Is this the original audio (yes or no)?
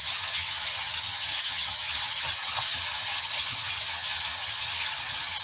no